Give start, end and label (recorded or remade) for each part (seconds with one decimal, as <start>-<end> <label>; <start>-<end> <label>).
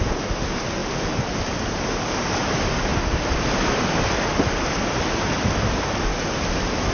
0.0-6.9 recorded